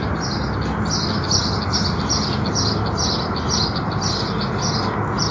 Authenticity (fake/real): real